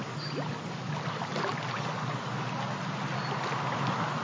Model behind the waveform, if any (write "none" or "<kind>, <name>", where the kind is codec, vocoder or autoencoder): none